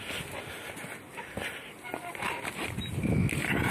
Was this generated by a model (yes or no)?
no